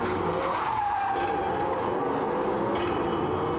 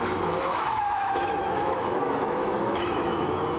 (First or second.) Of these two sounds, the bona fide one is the first